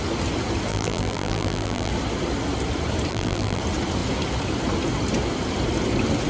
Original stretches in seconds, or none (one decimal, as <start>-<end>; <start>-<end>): 0.0-0.7; 1.9-3.1; 3.6-6.3